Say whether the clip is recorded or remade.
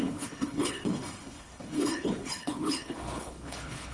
remade